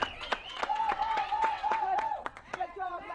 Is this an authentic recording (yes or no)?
no